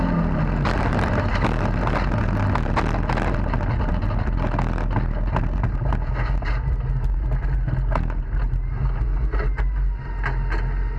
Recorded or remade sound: recorded